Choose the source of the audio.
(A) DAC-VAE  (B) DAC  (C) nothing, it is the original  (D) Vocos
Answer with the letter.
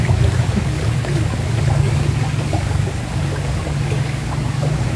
B